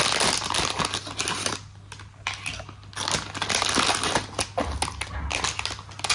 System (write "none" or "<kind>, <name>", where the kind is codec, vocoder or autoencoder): none